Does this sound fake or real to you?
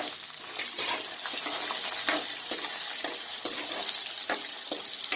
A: real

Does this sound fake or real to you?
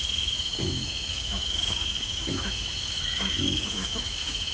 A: fake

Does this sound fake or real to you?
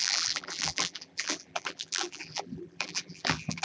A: fake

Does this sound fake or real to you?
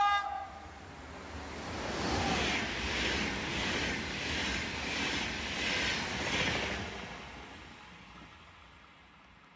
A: real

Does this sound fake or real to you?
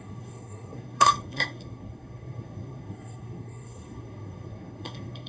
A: fake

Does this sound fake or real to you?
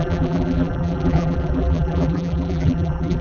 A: fake